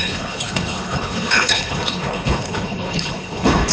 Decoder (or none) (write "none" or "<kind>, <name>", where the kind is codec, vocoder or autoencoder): codec, HILCodec